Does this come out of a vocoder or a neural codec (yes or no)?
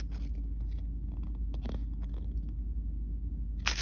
no